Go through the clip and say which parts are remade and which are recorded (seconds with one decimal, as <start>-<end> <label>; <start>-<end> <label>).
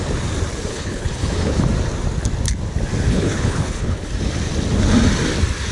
0.0-0.7 recorded; 0.7-1.6 remade; 1.6-3.1 recorded; 3.1-4.1 remade; 4.1-5.7 recorded